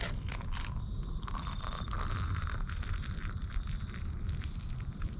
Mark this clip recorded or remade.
recorded